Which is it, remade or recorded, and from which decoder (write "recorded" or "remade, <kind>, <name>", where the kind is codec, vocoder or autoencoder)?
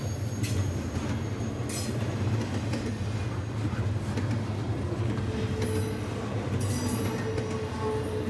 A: recorded